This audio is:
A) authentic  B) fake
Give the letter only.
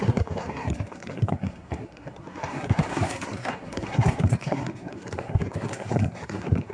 B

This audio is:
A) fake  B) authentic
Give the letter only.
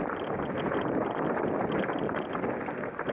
B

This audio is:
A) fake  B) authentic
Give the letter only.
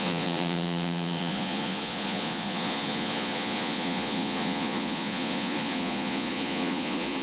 A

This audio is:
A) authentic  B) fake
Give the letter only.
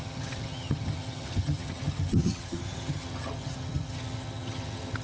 B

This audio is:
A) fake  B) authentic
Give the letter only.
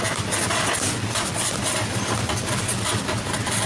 B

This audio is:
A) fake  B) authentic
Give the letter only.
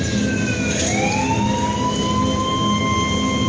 B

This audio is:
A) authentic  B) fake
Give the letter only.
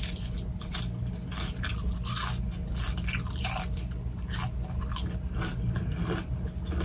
A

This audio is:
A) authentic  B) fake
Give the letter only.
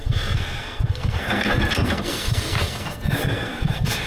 B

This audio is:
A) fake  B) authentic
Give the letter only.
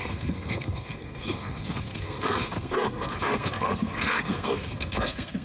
A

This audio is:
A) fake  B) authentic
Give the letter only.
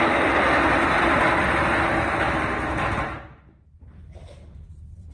B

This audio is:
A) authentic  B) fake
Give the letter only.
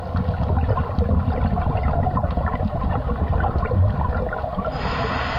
A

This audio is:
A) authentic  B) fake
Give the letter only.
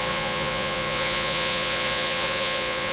B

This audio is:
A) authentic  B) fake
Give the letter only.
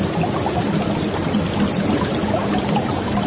A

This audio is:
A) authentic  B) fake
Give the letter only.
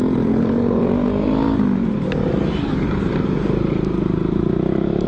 A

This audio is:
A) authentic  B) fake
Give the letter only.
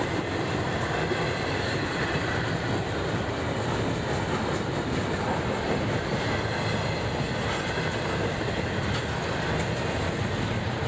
A